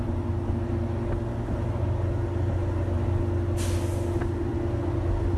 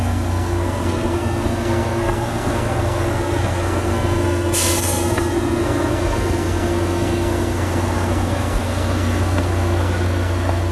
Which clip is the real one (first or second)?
first